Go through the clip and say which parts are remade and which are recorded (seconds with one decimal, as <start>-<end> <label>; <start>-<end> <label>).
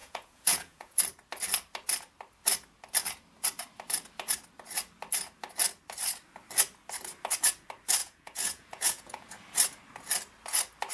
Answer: 0.0-1.0 remade; 1.0-8.0 recorded; 8.0-9.3 remade; 9.3-10.9 recorded